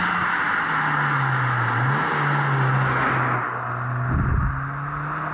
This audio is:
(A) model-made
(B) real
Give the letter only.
B